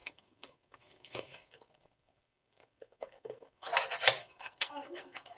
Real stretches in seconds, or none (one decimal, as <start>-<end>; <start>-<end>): 3.7-4.2